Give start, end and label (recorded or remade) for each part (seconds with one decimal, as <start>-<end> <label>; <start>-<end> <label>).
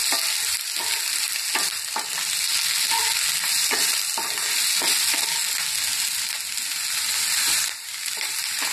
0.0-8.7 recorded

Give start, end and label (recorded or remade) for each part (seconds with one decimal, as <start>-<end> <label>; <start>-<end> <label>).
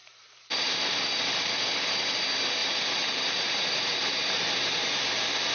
0.0-2.2 remade; 2.2-2.6 recorded; 2.6-5.0 remade; 5.0-5.5 recorded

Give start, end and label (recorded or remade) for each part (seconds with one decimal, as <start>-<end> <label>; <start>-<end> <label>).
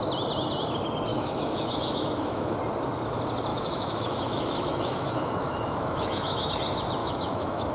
0.0-1.1 recorded; 1.1-2.6 remade; 2.6-3.5 recorded; 3.5-6.5 remade; 6.5-7.0 recorded; 7.0-7.7 remade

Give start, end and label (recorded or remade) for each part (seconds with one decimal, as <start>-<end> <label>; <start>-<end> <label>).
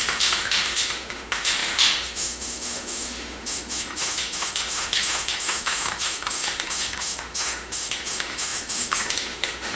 0.0-9.8 remade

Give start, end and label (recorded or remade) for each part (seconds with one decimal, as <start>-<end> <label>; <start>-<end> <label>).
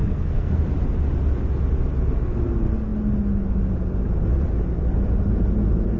0.0-0.6 remade; 0.6-6.0 recorded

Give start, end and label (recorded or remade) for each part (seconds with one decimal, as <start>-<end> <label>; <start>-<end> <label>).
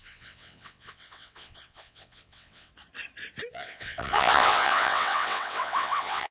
0.0-2.7 remade; 2.7-3.5 recorded; 3.5-6.3 remade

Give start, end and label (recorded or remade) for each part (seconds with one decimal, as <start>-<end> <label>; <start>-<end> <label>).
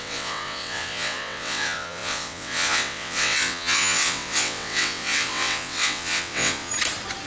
0.0-6.7 remade; 6.7-7.3 recorded